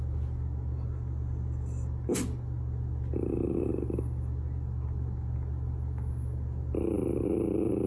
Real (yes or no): yes